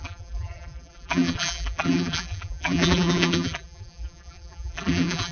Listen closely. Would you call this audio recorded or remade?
remade